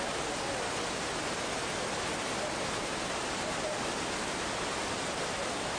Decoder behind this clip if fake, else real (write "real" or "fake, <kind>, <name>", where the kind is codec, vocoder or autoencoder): real